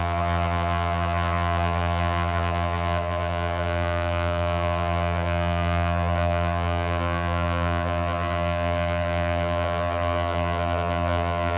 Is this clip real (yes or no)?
no